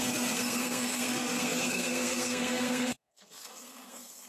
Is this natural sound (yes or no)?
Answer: no